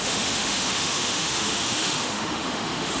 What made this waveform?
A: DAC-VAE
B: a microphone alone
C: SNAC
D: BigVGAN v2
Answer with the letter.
A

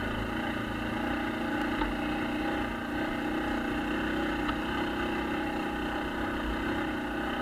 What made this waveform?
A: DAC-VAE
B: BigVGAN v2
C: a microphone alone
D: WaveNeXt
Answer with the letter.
C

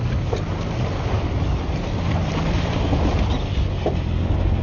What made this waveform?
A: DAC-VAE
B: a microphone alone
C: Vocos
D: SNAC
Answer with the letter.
B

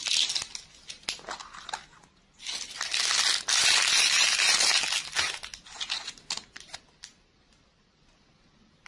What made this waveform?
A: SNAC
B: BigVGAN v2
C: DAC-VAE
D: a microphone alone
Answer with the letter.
D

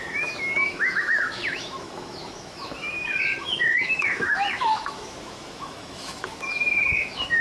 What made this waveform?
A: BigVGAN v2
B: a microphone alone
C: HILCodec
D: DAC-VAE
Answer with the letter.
D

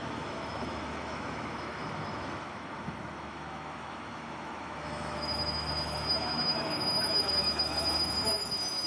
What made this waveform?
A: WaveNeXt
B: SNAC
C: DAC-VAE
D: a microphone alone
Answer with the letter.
C